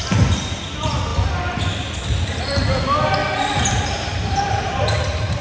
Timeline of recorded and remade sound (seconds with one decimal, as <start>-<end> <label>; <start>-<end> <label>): 0.0-3.2 recorded; 3.2-5.4 remade